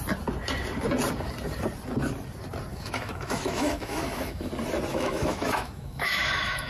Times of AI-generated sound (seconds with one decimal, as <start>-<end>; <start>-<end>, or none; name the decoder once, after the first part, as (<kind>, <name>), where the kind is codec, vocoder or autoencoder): 2.7-4.5 (autoencoder, DAC-VAE); 4.9-6.7